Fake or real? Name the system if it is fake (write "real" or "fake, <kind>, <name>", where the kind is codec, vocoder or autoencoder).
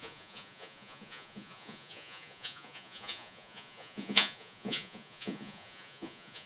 fake, vocoder, Vocos